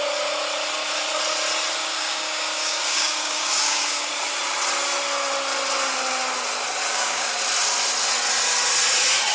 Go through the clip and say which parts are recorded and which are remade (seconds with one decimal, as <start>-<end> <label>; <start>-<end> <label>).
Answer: 0.0-1.8 recorded; 1.8-4.1 remade; 4.1-6.9 recorded; 6.9-7.4 remade; 7.4-9.3 recorded